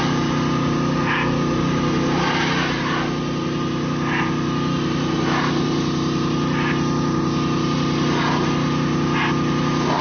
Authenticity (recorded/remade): recorded